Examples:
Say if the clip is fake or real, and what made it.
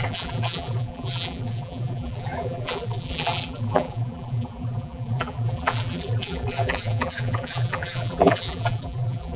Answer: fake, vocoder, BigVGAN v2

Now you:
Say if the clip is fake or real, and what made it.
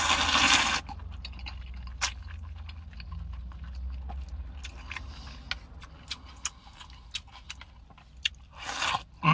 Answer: real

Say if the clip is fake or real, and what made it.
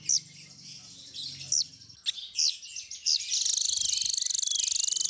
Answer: real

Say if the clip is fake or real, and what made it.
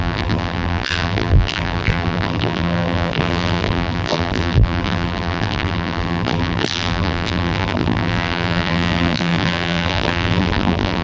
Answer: fake, vocoder, BigVGAN v2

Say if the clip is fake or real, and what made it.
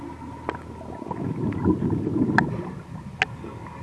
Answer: real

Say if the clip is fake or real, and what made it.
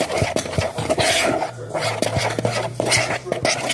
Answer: real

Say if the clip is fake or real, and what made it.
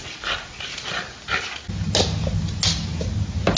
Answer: real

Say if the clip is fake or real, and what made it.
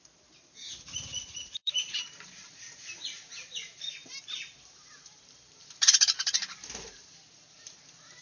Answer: fake, vocoder, BigVGAN v2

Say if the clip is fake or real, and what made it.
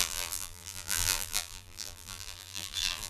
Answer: fake, vocoder, BigVGAN v2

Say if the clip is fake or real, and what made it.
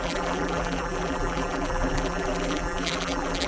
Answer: fake, vocoder, BigVGAN v2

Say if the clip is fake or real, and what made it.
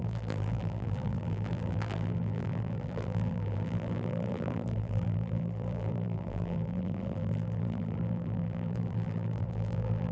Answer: fake, vocoder, BigVGAN v2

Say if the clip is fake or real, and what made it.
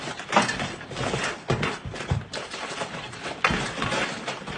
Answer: fake, vocoder, BigVGAN v2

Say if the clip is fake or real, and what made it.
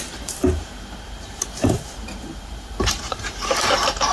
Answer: fake, vocoder, BigVGAN v2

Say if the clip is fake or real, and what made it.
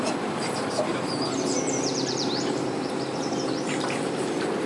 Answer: fake, vocoder, BigVGAN v2